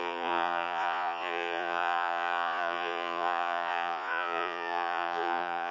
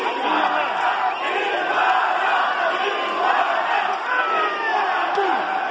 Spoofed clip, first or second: first